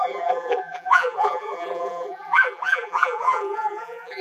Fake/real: fake